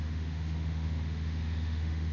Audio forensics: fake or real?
fake